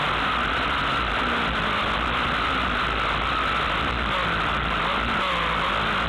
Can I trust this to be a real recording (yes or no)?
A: yes